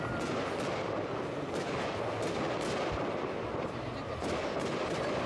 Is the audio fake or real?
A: real